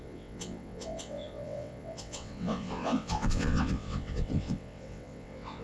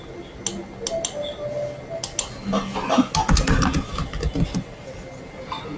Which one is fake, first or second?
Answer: first